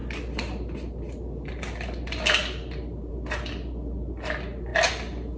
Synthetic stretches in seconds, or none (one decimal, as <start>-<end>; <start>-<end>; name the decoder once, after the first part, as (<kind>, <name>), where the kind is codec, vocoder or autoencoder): none